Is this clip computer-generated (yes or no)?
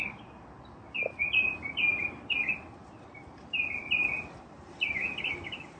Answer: no